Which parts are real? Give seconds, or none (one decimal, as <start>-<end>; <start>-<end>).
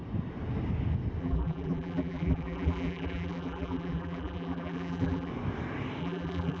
0.0-1.2; 5.3-6.0